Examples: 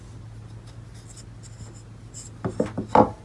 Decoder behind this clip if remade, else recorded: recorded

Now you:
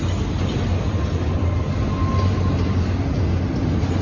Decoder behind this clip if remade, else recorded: recorded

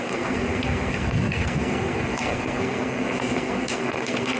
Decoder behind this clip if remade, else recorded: remade, codec, SNAC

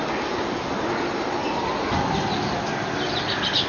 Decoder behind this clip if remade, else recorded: recorded